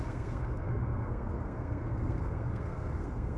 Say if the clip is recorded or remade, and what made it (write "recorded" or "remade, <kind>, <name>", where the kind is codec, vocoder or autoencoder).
remade, codec, SNAC